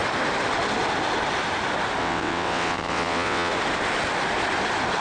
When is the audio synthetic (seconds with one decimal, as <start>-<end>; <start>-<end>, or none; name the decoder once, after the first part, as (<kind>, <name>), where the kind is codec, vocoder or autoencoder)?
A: 2.0-3.5 (vocoder, WaveNeXt)